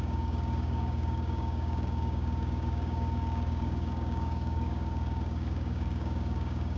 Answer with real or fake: fake